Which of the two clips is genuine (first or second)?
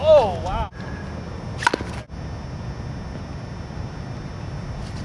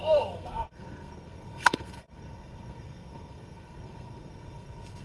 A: first